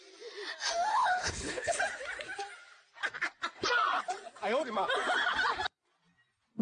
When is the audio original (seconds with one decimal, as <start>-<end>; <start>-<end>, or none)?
0.0-0.9; 1.8-6.6

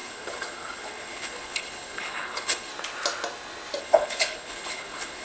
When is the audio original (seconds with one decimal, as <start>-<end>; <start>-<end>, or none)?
2.7-3.8

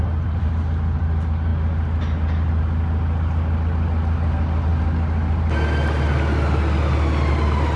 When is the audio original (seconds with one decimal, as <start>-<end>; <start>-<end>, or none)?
0.0-7.8

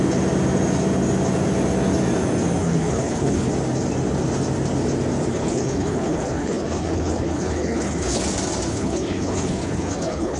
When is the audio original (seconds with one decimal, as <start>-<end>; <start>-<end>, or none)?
0.0-2.6; 3.5-5.3; 8.2-8.7